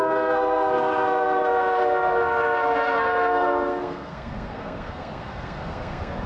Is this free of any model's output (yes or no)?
no